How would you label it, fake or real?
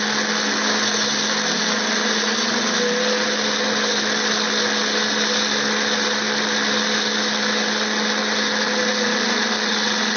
real